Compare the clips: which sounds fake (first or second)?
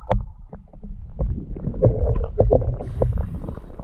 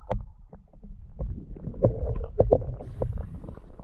second